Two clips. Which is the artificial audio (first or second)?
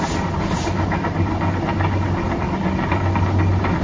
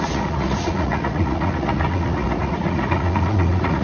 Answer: second